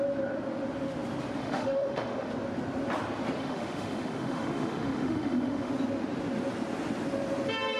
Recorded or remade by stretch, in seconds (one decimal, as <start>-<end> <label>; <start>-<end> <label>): 0.0-1.4 recorded; 1.4-2.3 remade; 2.3-3.4 recorded; 3.4-5.7 remade; 5.7-7.8 recorded